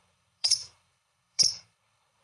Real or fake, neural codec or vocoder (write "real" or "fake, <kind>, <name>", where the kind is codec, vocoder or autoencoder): fake, codec, HILCodec